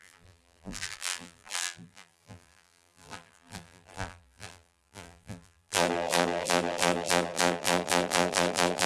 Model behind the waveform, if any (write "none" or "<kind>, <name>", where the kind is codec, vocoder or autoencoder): vocoder, BigVGAN v2